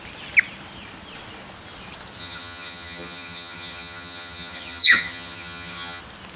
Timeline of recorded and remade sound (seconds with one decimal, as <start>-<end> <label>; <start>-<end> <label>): 0.0-2.2 recorded; 2.2-6.0 remade; 6.0-6.4 recorded